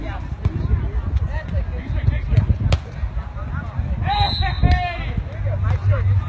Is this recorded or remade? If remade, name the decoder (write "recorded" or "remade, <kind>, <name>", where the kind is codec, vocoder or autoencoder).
recorded